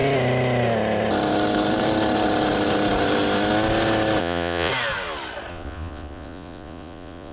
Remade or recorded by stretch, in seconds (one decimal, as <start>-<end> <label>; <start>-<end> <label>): 0.0-4.2 recorded; 4.2-4.7 remade; 4.7-5.5 recorded; 5.5-7.3 remade